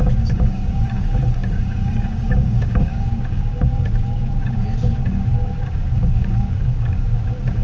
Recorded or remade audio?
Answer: remade